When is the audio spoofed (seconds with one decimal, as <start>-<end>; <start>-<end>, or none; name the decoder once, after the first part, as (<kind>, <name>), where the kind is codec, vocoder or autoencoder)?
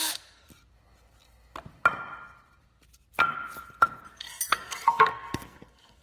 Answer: 0.0-0.5 (codec, SNAC); 4.1-6.0